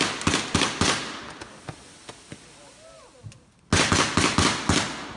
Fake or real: real